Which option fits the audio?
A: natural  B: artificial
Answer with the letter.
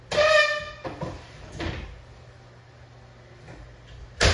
A